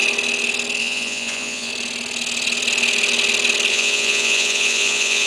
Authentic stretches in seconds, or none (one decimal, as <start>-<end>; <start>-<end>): 0.0-0.8; 1.7-3.7

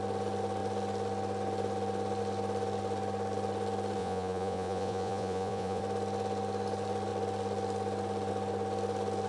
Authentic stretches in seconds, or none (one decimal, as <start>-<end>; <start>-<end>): 0.0-4.0; 5.8-9.3

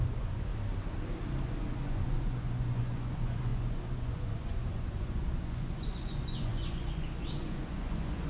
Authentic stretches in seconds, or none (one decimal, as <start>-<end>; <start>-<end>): 0.5-1.4

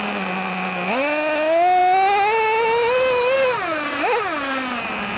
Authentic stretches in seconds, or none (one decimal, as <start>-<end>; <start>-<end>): 0.0-5.2